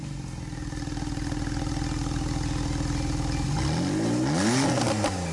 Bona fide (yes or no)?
yes